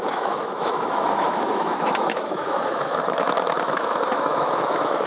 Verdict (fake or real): fake